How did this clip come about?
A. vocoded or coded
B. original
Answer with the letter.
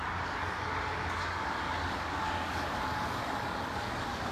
A